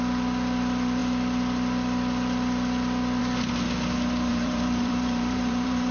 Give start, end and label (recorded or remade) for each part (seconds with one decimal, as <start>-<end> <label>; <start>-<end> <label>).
0.0-4.3 recorded; 4.3-5.9 remade